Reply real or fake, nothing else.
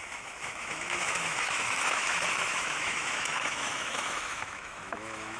fake